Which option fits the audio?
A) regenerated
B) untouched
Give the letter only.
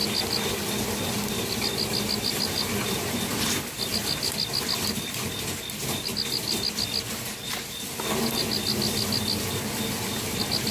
B